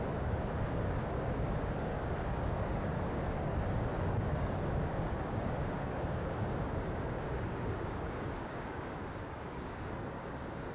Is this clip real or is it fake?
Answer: fake